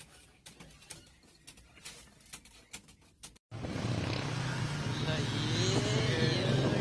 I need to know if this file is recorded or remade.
recorded